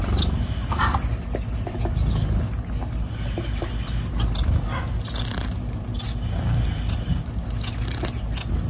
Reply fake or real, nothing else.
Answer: real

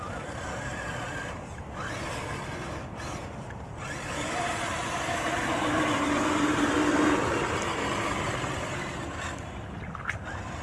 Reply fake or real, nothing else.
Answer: real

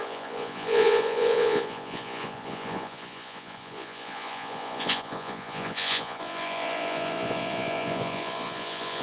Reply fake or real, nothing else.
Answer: fake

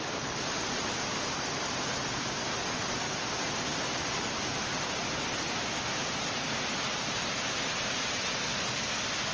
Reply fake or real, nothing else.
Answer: real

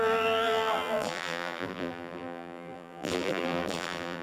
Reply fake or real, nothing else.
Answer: fake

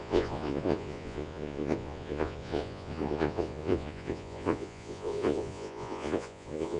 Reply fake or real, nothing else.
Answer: fake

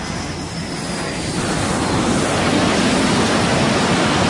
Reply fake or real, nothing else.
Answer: real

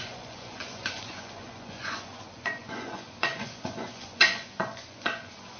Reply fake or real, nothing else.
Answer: fake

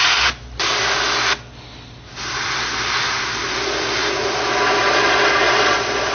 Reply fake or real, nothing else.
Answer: real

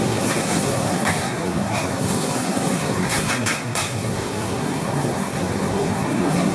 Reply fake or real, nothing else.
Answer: fake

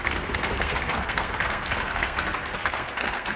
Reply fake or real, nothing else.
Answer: fake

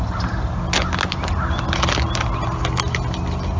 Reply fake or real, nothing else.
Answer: real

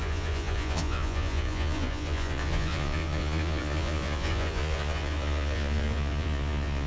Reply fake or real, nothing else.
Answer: fake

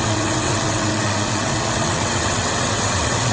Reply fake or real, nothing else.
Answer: fake